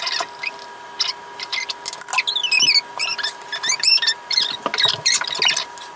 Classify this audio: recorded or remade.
recorded